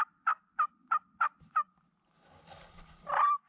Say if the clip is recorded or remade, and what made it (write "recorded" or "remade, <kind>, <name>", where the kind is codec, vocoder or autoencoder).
recorded